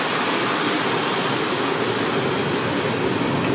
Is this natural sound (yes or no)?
yes